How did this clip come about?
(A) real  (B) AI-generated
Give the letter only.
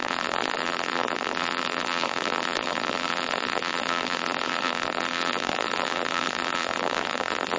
B